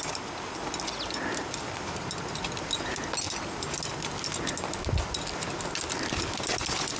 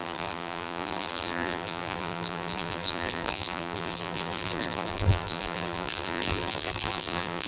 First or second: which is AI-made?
second